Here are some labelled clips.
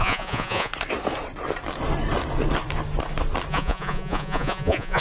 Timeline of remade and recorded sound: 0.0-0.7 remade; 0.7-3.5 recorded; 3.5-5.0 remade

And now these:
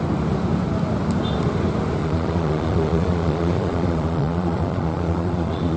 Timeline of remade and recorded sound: 0.0-2.0 recorded; 2.0-5.8 remade

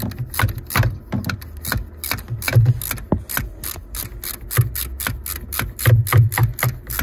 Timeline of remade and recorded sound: 0.0-7.0 recorded

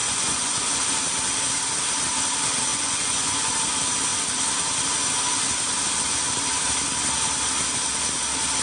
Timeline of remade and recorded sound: 0.0-0.8 remade; 0.8-2.7 recorded; 2.7-3.5 remade; 3.5-8.6 recorded

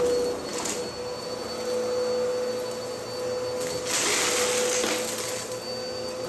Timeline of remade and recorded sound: 0.0-6.3 recorded

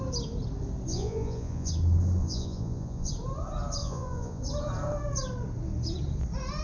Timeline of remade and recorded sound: 0.0-0.9 recorded; 0.9-1.7 remade; 1.7-2.2 recorded; 2.2-3.1 remade; 3.1-3.8 recorded; 3.8-4.4 remade; 4.4-6.6 recorded

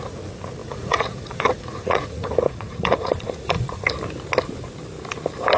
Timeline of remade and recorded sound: 0.0-0.6 recorded; 0.6-3.9 remade; 3.9-5.6 recorded